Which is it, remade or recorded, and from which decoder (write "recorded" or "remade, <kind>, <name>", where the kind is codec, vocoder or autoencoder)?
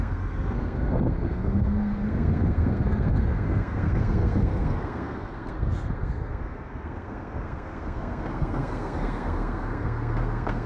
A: remade, codec, SNAC